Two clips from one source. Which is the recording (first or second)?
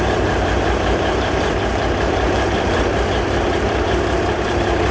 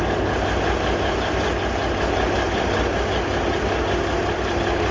second